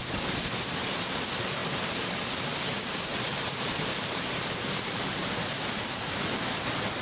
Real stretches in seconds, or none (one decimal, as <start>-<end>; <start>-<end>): 0.0-3.3; 5.4-7.0